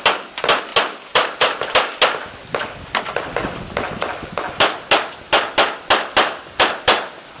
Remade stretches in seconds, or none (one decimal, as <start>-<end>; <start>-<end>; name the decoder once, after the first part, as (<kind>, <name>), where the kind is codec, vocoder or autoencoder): none